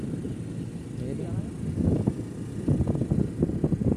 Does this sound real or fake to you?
real